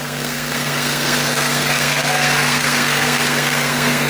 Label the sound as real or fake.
fake